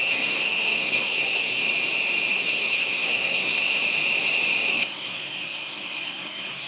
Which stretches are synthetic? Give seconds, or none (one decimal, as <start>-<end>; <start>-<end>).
0.0-1.6; 2.3-3.8; 4.7-6.7